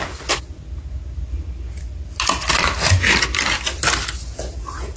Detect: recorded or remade recorded